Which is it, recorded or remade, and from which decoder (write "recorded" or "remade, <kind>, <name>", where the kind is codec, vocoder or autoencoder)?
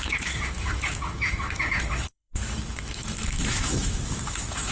remade, autoencoder, DAC-VAE